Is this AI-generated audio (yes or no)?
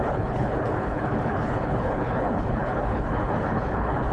yes